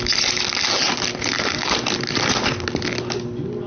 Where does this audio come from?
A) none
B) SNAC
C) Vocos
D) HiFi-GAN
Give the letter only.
A